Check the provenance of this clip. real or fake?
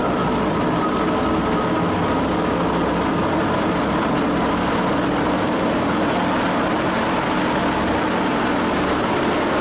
real